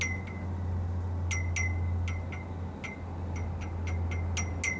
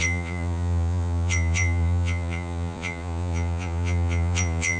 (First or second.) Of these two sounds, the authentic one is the first